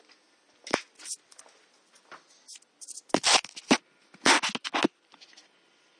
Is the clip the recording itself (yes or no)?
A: yes